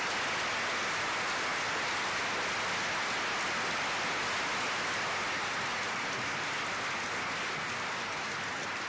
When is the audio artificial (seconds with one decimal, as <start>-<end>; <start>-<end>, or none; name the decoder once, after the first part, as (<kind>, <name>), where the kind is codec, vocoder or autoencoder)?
none